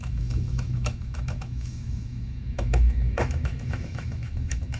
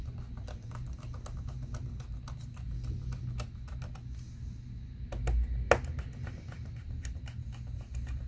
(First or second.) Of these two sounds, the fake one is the first